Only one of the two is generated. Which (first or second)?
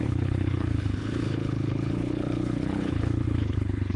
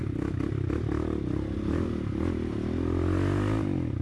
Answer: first